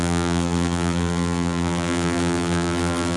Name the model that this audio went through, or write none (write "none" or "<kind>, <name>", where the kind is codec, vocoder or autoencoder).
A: vocoder, BigVGAN v2